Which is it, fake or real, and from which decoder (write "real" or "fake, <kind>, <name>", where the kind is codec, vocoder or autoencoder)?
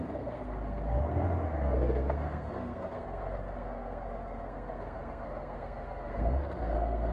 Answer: fake, codec, SNAC